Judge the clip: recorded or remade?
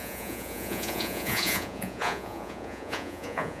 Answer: remade